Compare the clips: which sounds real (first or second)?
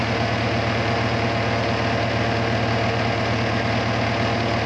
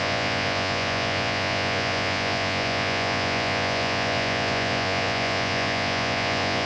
first